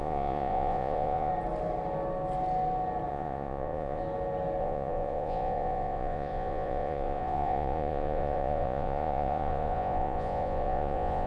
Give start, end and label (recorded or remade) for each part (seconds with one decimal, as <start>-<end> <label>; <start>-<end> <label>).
0.0-1.3 remade; 1.3-3.1 recorded; 3.1-4.0 remade; 4.0-4.6 recorded; 4.6-11.3 remade